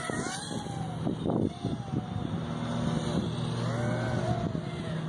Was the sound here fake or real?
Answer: real